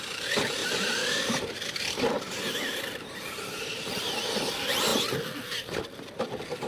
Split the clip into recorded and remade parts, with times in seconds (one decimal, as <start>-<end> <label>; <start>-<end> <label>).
0.0-4.9 remade; 4.9-6.2 recorded; 6.2-6.7 remade